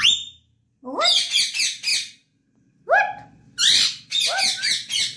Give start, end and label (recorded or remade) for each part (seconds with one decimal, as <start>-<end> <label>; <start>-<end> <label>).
0.0-5.2 recorded